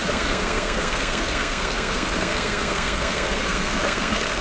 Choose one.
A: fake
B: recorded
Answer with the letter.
A